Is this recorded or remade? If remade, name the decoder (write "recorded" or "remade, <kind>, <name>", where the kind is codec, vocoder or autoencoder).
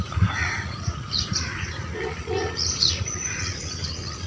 remade, vocoder, Vocos